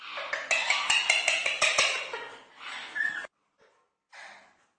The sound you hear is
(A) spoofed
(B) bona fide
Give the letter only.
B